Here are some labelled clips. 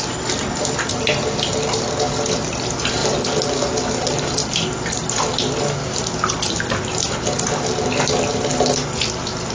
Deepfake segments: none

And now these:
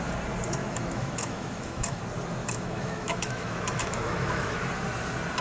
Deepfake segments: 0.6-2.0 (autoencoder, DAC-VAE); 2.4-4.6

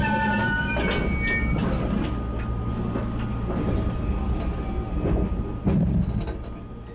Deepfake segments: none

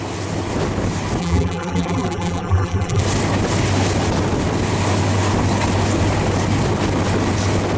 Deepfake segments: 1.2-3.0 (vocoder, BigVGAN v2)

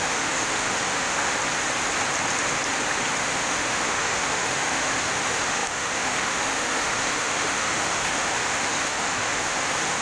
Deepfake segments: 0.0-1.4 (autoencoder, DAC-VAE); 3.2-10.0

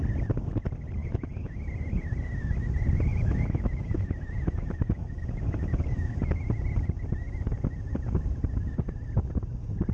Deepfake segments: 1.0-1.6 (autoencoder, DAC-VAE); 3.1-6.2

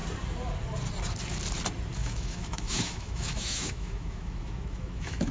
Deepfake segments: 2.0-5.3 (autoencoder, DAC-VAE)